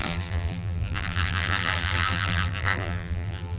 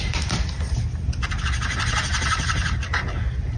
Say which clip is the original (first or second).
second